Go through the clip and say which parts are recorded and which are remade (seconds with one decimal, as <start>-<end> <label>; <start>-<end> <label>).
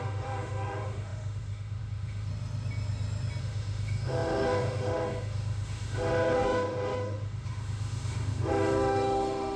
0.0-2.3 remade; 2.3-3.4 recorded; 3.4-9.6 remade